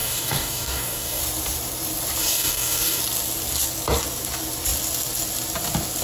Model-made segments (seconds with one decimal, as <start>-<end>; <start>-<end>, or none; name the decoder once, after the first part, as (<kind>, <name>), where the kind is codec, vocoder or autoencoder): 0.0-1.2 (codec, DAC); 2.2-3.0